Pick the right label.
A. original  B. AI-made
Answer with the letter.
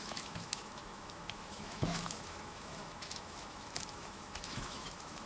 B